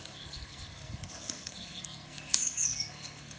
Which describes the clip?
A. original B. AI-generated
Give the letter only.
B